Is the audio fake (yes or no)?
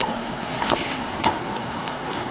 yes